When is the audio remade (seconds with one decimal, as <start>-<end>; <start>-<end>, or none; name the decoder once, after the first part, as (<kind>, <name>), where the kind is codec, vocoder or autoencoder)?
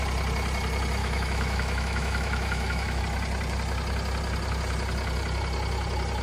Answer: 1.0-3.0 (autoencoder, DAC-VAE)